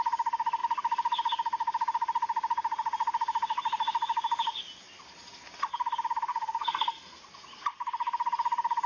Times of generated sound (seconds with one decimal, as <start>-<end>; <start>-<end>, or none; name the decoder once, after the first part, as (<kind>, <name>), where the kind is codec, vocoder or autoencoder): 6.3-7.2 (codec, SNAC)